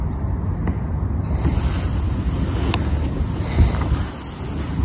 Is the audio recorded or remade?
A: recorded